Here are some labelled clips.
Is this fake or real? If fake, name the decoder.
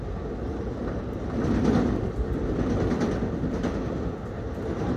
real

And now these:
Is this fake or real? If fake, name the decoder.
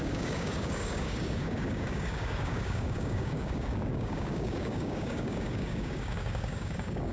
fake, codec, DAC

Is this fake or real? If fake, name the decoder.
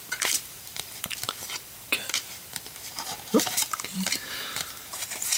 fake, vocoder, BigVGAN v2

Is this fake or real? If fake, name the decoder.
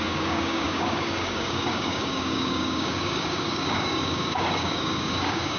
fake, codec, DAC